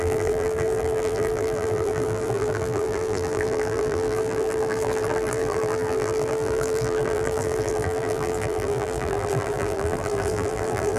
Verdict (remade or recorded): remade